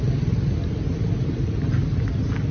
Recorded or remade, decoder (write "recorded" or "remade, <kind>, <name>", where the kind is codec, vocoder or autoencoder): recorded